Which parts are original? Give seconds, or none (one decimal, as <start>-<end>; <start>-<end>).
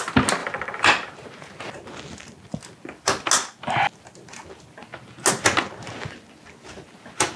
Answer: 0.0-0.4; 1.1-7.4